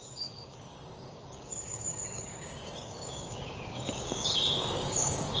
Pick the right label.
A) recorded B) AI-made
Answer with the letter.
B